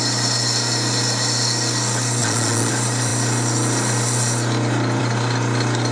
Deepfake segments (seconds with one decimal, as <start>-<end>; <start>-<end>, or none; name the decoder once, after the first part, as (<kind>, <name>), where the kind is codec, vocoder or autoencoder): 2.2-2.7 (vocoder, Vocos)